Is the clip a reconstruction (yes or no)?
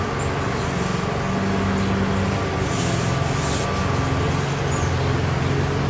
no